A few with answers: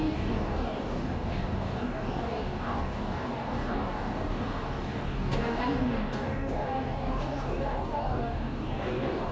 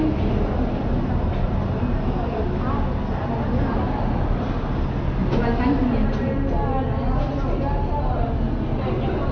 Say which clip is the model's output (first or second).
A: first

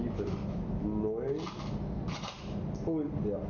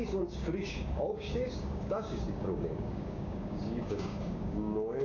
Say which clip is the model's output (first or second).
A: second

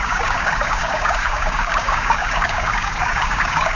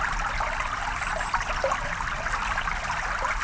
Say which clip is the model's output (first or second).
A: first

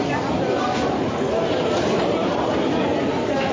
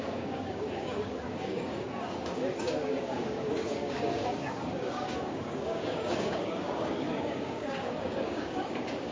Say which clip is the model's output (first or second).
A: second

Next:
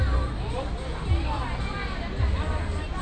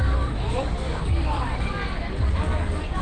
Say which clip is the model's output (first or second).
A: second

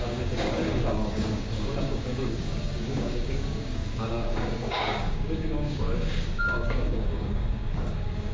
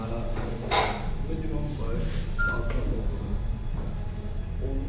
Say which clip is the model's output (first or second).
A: first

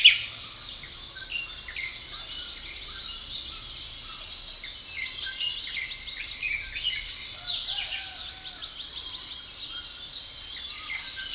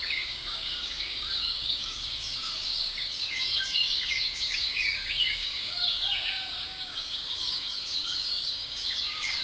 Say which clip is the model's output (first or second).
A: second